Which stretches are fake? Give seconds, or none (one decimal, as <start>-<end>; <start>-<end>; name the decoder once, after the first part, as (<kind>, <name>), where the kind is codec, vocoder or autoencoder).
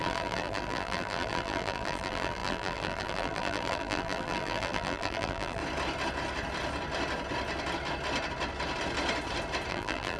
0.0-5.6 (vocoder, BigVGAN v2); 9.7-10.2